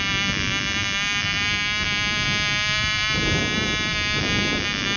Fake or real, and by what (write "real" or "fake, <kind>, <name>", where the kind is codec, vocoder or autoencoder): real